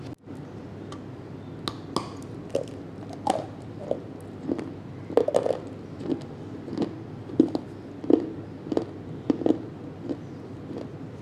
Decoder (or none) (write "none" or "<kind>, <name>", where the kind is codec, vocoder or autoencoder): none